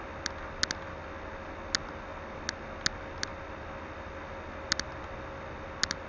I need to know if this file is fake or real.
real